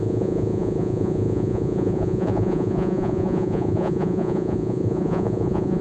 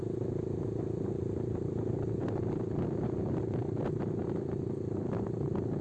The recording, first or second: second